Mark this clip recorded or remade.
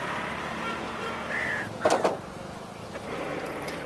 recorded